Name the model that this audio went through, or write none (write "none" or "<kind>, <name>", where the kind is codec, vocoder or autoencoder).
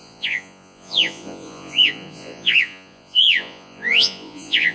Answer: vocoder, Vocos